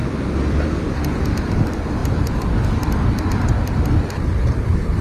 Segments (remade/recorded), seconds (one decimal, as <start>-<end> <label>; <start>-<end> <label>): 0.0-0.8 remade; 0.8-2.0 recorded; 2.0-5.0 remade